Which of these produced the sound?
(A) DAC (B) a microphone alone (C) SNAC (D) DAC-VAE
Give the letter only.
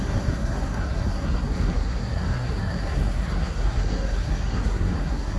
C